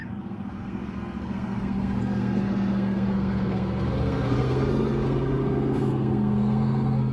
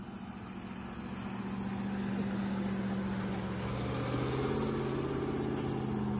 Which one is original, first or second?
second